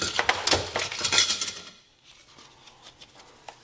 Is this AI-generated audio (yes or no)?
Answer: no